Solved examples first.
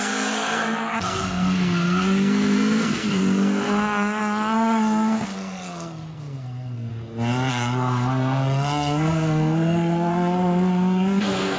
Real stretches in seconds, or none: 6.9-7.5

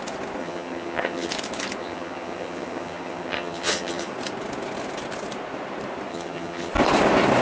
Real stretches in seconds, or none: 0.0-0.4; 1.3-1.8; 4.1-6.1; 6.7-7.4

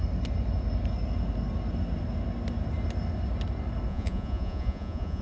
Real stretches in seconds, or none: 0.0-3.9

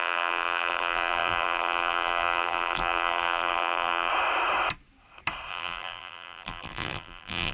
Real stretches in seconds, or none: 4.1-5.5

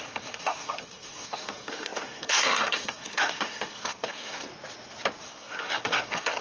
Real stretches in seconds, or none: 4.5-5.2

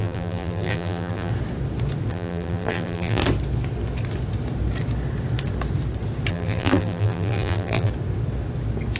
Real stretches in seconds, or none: 1.3-2.1; 3.2-6.3; 7.9-9.0